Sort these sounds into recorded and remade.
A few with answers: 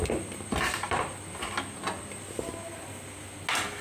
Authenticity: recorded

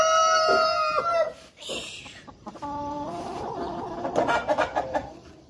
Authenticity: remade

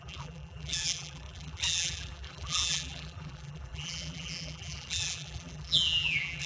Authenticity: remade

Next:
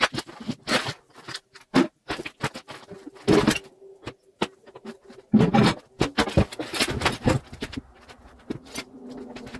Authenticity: recorded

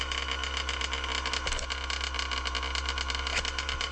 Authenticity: recorded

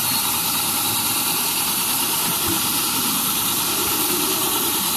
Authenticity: recorded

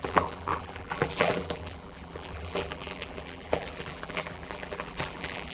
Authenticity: remade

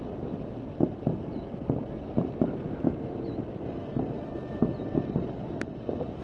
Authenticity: remade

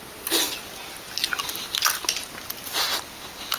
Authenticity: recorded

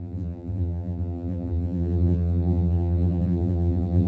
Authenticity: remade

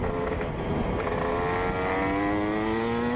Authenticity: recorded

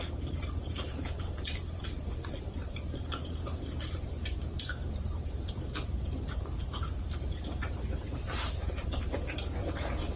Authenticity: remade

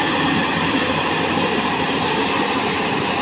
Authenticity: remade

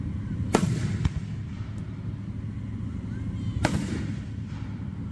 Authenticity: recorded